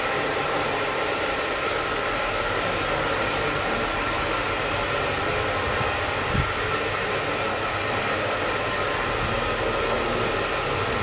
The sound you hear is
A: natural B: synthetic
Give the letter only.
A